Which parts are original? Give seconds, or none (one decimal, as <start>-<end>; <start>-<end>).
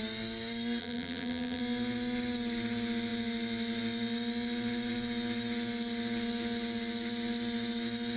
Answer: 0.0-0.8; 1.6-8.2